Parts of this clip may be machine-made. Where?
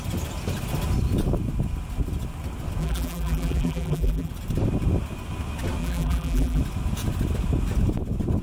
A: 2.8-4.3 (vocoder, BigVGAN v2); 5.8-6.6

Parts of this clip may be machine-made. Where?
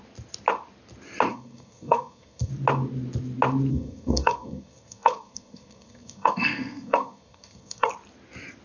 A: 1.3-2.5 (codec, SNAC); 3.7-7.9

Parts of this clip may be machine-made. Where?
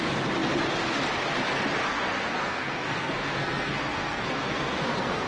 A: 1.8-5.3 (codec, SNAC)